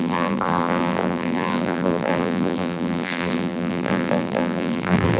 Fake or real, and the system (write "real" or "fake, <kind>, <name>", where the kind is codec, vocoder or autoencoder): fake, vocoder, BigVGAN v2